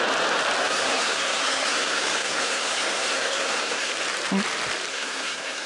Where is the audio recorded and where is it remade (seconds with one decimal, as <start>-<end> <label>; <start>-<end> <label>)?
0.0-0.6 recorded; 0.6-3.9 remade; 3.9-4.9 recorded; 4.9-5.7 remade